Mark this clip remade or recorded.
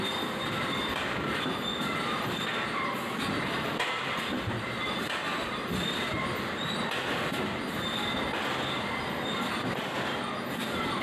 recorded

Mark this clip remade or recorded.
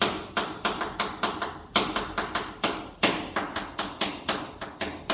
recorded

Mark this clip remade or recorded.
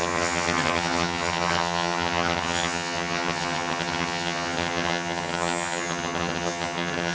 remade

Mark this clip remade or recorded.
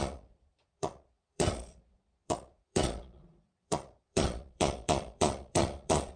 remade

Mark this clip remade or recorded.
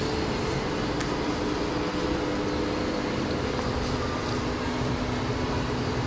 recorded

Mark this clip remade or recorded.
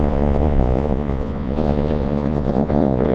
remade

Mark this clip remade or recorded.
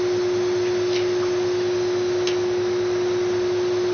recorded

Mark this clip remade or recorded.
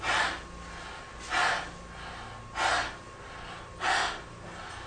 recorded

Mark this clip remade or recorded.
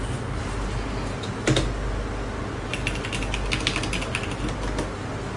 recorded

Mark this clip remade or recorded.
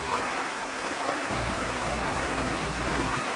remade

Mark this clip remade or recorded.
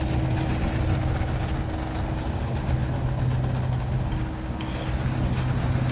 recorded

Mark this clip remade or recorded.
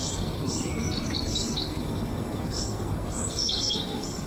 remade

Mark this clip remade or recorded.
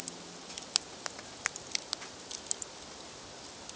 recorded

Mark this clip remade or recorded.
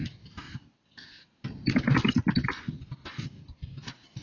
recorded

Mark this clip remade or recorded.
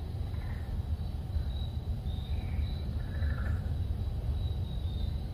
recorded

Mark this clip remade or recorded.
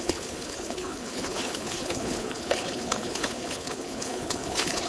remade